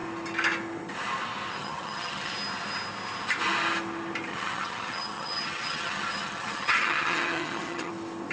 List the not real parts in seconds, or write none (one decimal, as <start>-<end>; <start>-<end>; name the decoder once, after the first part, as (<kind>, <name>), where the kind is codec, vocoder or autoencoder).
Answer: 1.6-2.3 (vocoder, HiFi-GAN); 4.3-7.9